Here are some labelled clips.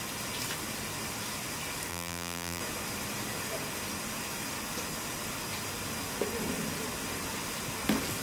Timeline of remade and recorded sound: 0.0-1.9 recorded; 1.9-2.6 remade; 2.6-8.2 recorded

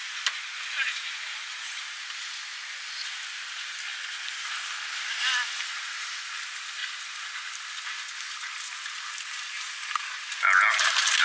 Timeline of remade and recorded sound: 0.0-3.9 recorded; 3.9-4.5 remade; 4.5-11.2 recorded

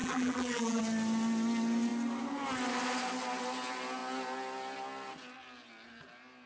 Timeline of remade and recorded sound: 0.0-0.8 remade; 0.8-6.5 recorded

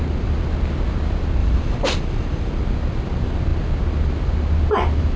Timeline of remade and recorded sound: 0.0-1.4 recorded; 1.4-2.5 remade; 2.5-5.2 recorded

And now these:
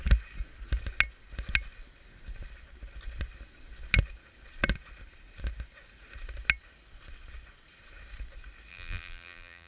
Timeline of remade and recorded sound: 0.0-8.7 recorded; 8.7-9.7 remade

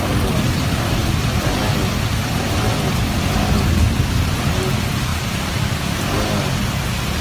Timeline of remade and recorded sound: 0.0-1.0 recorded; 1.0-1.7 remade; 1.7-5.1 recorded; 5.1-6.0 remade; 6.0-7.2 recorded